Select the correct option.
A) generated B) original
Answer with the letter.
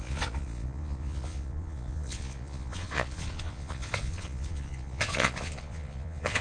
A